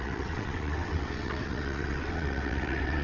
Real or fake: fake